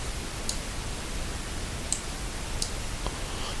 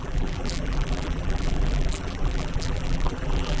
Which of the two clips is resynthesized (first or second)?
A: second